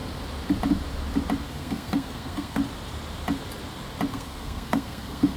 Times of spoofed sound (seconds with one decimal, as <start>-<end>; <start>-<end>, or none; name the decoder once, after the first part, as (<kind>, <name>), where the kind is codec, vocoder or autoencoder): 1.5-2.6 (codec, SNAC); 4.1-5.4

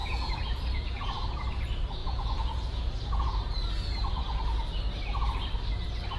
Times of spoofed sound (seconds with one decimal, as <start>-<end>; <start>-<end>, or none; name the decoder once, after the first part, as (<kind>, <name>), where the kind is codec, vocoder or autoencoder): 0.0-1.4 (vocoder, Vocos); 2.0-3.7

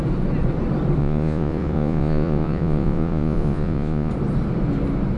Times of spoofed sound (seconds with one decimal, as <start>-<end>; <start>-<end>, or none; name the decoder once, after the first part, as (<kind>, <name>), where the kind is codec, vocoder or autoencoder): 1.0-4.1 (vocoder, Vocos)

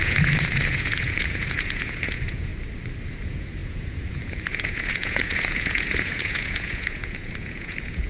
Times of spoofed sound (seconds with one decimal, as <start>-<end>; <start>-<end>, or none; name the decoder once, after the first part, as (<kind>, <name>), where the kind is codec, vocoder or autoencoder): 0.0-2.5 (vocoder, Vocos); 3.1-8.1